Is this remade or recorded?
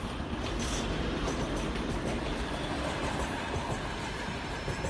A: recorded